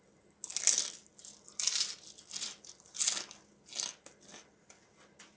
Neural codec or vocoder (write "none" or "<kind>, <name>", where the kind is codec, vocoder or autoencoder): none